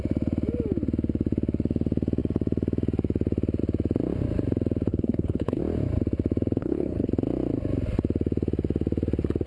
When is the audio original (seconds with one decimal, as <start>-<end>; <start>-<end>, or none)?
0.0-4.9; 5.6-6.6; 7.1-9.5